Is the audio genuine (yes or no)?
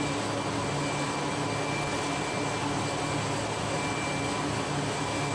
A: yes